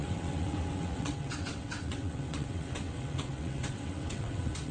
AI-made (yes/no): yes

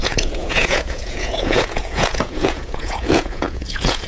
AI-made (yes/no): yes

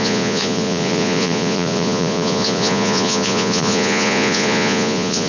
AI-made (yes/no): yes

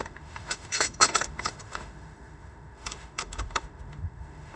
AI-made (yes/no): yes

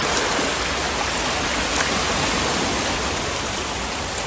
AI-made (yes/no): no